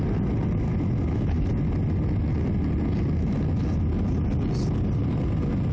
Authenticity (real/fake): real